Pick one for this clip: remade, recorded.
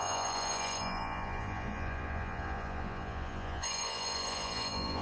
remade